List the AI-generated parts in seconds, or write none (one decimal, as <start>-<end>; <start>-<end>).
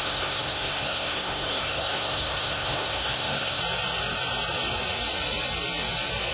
0.0-3.6